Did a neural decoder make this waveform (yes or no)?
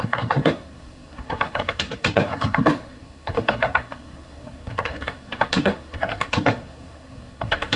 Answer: yes